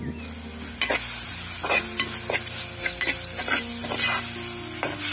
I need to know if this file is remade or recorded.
recorded